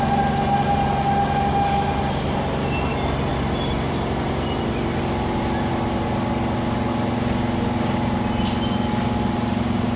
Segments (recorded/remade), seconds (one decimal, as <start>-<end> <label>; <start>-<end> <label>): 0.0-10.0 recorded